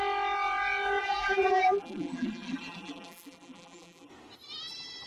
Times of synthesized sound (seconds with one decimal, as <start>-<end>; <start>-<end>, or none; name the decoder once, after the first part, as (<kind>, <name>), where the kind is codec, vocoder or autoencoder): 1.0-4.1 (vocoder, BigVGAN v2)